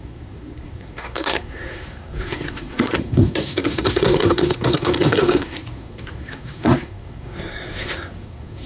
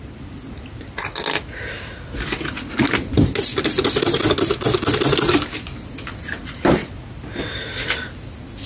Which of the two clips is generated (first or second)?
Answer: first